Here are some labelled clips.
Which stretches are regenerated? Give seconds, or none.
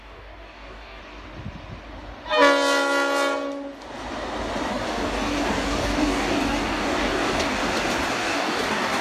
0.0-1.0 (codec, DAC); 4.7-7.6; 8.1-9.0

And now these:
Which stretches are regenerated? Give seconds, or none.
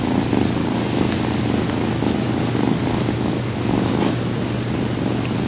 0.6-3.9 (codec, DAC)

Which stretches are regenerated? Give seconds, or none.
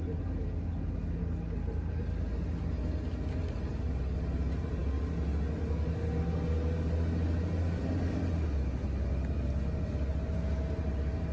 none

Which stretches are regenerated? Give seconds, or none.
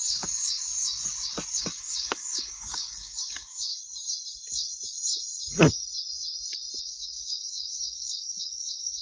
0.0-0.7 (codec, DAC); 1.6-3.7; 6.8-9.0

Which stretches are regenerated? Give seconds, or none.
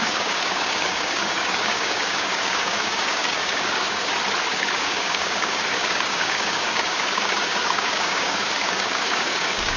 0.0-4.1 (codec, DAC); 4.5-9.8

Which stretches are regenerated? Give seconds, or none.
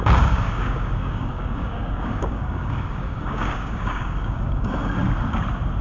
0.0-5.0 (codec, DAC)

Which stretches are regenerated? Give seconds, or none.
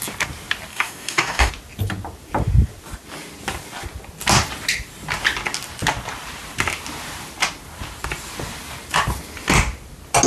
0.7-1.5 (codec, DAC)